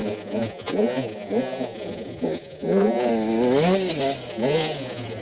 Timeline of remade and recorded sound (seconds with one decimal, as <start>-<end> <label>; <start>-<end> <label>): 0.0-3.1 remade; 3.1-4.3 recorded; 4.3-5.2 remade